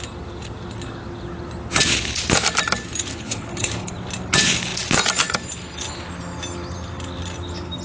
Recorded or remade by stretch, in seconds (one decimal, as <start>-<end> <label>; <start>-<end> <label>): 0.0-3.1 recorded; 3.1-3.9 remade; 3.9-7.8 recorded